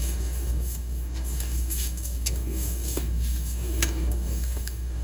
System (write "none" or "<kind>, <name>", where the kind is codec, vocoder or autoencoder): codec, DAC